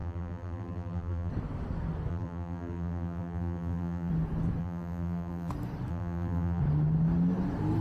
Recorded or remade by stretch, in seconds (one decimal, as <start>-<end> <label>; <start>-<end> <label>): 0.0-1.3 remade; 1.3-2.1 recorded; 2.1-4.1 remade; 4.1-4.6 recorded; 4.6-5.5 remade; 5.5-5.9 recorded; 5.9-6.6 remade; 6.6-7.8 recorded